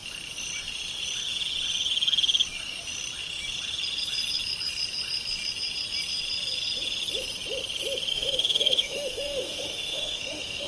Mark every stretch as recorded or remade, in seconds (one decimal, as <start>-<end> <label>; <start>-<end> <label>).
0.0-8.1 recorded; 8.1-10.7 remade